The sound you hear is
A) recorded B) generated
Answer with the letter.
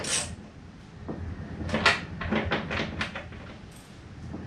A